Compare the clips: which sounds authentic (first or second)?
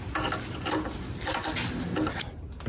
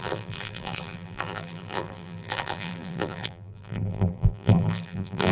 first